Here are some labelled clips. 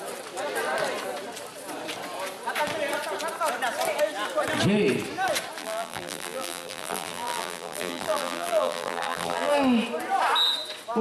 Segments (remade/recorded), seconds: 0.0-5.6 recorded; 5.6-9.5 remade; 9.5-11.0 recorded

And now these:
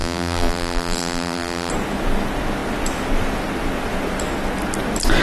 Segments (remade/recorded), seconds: 0.0-1.7 remade; 1.7-5.2 recorded

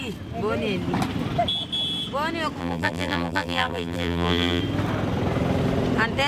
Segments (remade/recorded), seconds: 0.0-2.6 recorded; 2.6-4.6 remade; 4.6-6.3 recorded

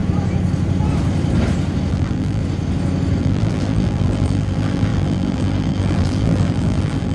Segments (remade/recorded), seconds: 0.0-1.9 recorded; 1.9-2.4 remade; 2.4-3.2 recorded; 3.2-7.1 remade

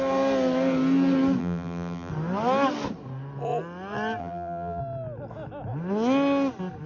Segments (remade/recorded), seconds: 0.0-1.4 recorded; 1.4-2.1 remade; 2.1-4.2 recorded; 4.2-4.8 remade; 4.8-6.9 recorded

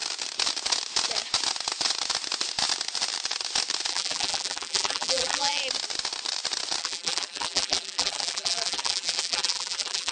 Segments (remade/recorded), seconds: 0.0-3.9 recorded; 3.9-5.6 remade; 5.6-6.8 recorded; 6.8-10.1 remade

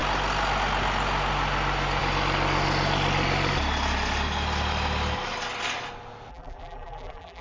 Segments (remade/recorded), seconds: 0.0-6.3 recorded; 6.3-7.4 remade